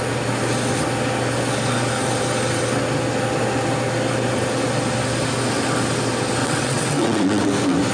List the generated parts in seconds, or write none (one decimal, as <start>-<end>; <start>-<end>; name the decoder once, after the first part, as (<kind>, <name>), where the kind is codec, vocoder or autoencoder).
6.4-7.5 (vocoder, WaveNeXt)